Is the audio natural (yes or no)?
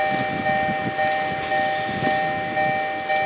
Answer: yes